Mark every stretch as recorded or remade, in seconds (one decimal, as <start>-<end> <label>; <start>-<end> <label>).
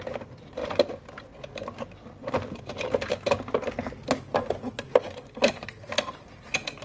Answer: 0.0-6.8 recorded